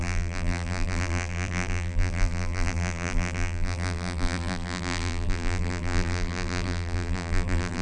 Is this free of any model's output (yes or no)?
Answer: no